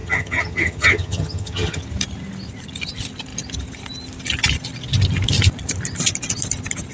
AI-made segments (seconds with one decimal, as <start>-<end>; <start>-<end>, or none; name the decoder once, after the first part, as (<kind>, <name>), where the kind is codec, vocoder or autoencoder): 0.0-1.8 (vocoder, HiFi-GAN)